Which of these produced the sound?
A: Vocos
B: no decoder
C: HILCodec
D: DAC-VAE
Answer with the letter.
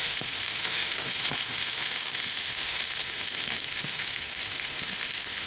D